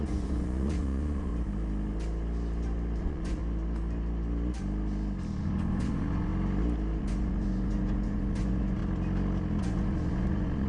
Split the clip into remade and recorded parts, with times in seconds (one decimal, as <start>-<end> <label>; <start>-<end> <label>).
0.0-1.3 remade; 1.3-3.0 recorded; 3.0-3.4 remade; 3.4-5.4 recorded; 5.4-6.3 remade; 6.3-7.0 recorded; 7.0-8.8 remade; 8.8-9.6 recorded; 9.6-10.7 remade